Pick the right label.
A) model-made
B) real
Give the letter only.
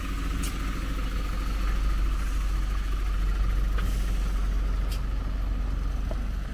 B